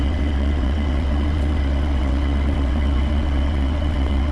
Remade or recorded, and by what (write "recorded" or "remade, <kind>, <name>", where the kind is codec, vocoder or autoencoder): remade, vocoder, WaveNeXt